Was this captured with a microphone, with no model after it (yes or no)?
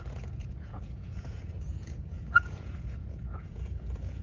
no